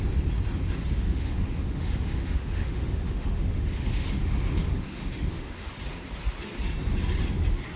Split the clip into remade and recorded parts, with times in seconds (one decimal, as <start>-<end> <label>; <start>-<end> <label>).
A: 0.0-1.0 recorded; 1.0-5.7 remade; 5.7-7.8 recorded